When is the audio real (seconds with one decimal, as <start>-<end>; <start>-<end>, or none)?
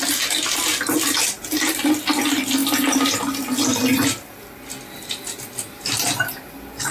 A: 0.0-6.9